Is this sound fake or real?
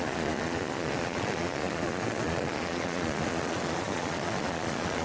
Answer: fake